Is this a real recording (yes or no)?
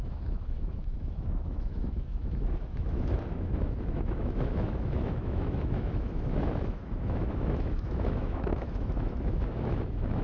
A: no